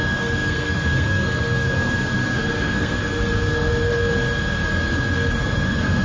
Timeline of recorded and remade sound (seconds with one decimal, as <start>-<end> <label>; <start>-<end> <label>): 0.0-3.9 remade; 3.9-5.3 recorded; 5.3-6.0 remade